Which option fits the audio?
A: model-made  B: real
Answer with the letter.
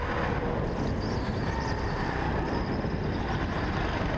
B